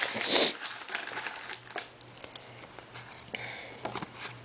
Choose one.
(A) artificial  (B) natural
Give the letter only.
B